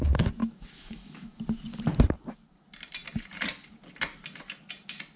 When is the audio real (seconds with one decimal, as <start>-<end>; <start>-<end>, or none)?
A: 0.0-0.4; 1.4-5.2